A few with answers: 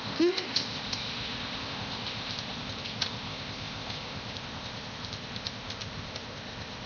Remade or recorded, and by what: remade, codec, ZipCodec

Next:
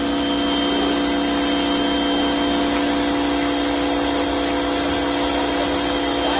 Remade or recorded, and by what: recorded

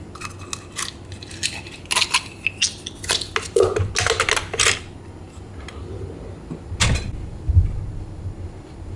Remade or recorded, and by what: recorded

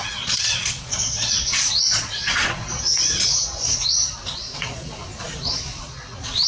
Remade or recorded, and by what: remade, vocoder, Vocos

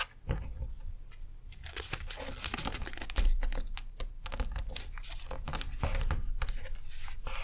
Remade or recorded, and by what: recorded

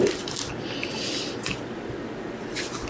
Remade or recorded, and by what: recorded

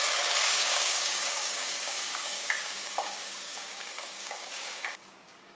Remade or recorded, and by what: remade, codec, DAC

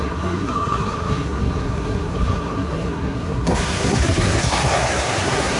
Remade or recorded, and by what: remade, codec, SNAC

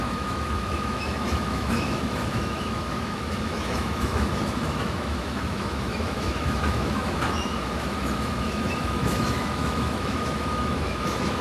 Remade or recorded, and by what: remade, autoencoder, DAC-VAE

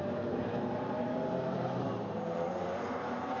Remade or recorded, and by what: remade, vocoder, BigVGAN v2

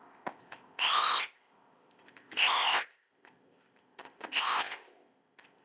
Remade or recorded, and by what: remade, codec, ZipCodec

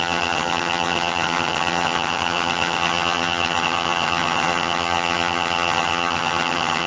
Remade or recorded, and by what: remade, vocoder, HiFi-GAN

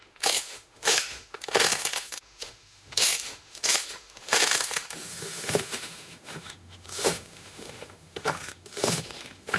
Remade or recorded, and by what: remade, autoencoder, DAC-VAE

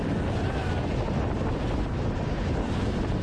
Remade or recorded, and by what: recorded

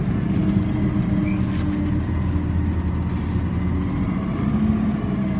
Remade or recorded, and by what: recorded